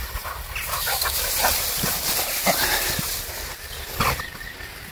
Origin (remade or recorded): recorded